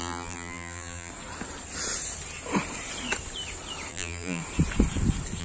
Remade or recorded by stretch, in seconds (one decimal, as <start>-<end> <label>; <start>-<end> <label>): 0.0-1.1 remade; 1.1-3.9 recorded; 3.9-4.4 remade; 4.4-5.4 recorded